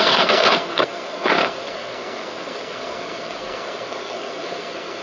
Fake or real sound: fake